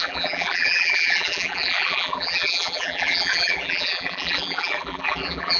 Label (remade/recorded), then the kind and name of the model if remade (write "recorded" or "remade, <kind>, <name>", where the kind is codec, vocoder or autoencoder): remade, vocoder, BigVGAN v2